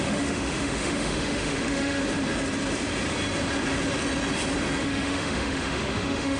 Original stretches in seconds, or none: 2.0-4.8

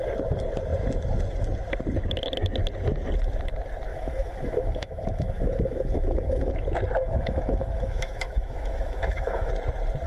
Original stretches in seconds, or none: 0.0-3.9; 6.5-7.0; 9.5-10.1

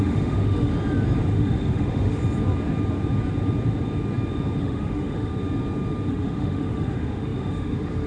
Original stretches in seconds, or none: 0.7-1.3; 2.2-4.6; 5.3-6.1

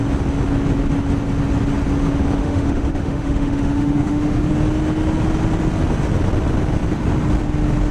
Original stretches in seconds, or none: 0.0-2.4; 4.5-7.9